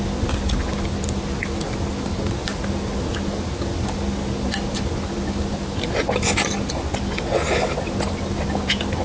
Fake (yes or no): no